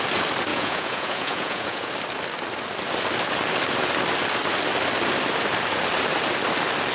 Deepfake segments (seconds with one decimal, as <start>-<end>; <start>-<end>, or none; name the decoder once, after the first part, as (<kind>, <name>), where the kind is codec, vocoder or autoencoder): 0.5-1.9 (vocoder, Vocos)